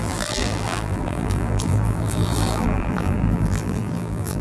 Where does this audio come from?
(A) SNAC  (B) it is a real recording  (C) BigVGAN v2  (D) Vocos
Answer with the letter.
C